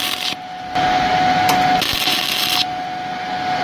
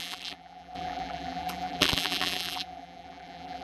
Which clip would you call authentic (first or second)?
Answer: first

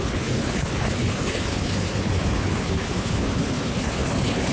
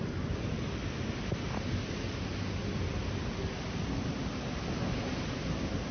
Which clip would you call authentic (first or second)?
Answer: second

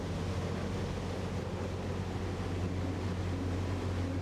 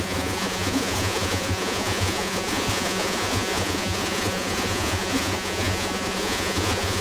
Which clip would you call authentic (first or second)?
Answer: first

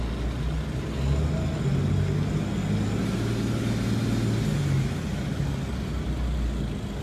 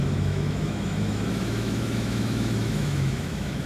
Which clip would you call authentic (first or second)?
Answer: first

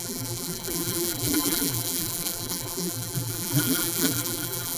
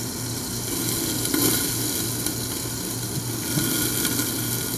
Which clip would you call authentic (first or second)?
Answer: second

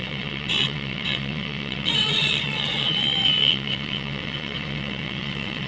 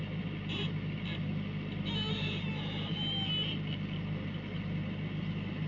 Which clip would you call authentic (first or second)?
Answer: second